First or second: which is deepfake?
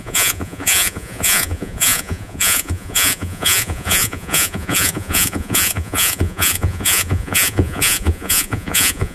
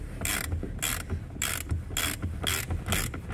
first